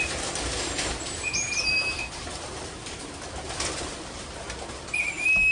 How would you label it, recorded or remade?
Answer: recorded